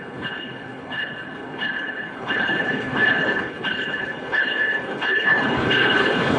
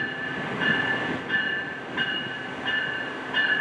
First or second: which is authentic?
second